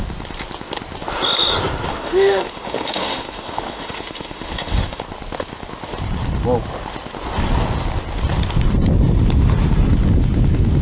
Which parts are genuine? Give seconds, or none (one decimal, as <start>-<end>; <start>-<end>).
0.0-1.9; 5.0-10.8

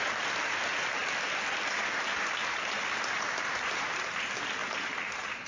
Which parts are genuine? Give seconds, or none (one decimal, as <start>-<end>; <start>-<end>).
0.0-2.4; 3.0-4.6